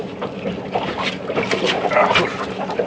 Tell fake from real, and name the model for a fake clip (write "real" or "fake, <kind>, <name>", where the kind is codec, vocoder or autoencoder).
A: real